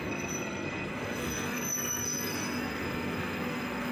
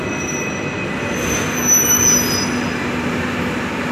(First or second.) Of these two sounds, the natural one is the second